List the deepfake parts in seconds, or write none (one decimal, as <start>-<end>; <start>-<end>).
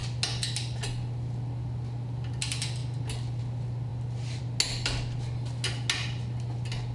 none